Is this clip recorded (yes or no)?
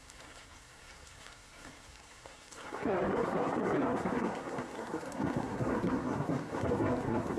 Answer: no